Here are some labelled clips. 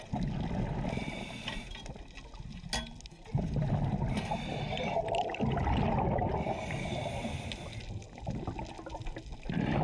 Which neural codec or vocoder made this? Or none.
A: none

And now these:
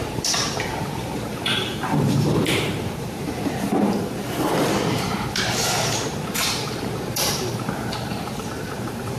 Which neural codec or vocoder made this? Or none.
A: vocoder, BigVGAN v2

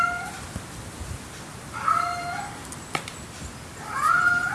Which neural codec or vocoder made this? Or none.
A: none